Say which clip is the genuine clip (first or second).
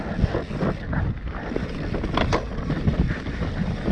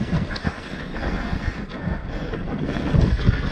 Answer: first